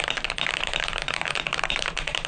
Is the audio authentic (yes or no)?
no